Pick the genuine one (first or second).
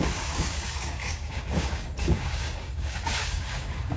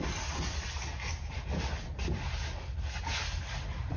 second